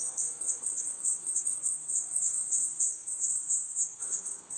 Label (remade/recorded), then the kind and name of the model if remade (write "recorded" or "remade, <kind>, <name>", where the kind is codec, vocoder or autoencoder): remade, codec, SNAC